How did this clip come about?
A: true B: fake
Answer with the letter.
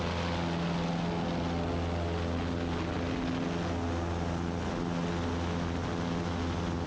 A